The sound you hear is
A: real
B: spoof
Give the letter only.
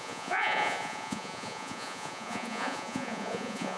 B